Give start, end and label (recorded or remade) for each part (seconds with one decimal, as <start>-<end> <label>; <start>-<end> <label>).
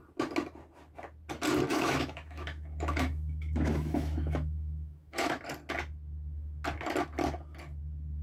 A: 0.0-1.7 recorded; 1.7-5.4 remade; 5.4-8.2 recorded